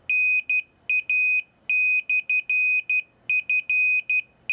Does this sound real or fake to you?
real